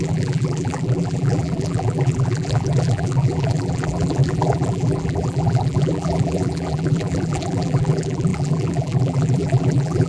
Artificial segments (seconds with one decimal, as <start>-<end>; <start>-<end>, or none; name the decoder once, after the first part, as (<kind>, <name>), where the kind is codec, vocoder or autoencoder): 0.0-10.1 (vocoder, BigVGAN v2)